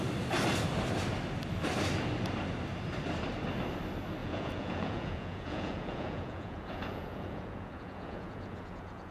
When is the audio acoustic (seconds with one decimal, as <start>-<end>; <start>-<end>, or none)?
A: 0.0-4.2